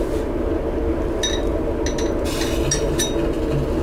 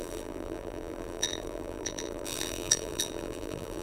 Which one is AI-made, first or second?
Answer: second